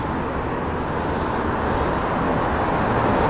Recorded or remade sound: recorded